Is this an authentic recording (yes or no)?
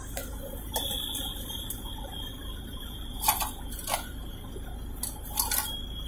yes